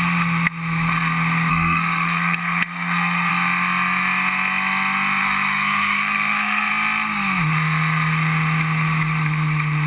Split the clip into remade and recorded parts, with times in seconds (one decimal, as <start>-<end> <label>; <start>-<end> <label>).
0.0-1.5 recorded; 1.5-3.3 remade; 3.3-5.2 recorded; 5.2-6.7 remade; 6.7-9.9 recorded